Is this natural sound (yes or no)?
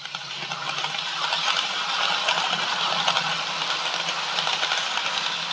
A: yes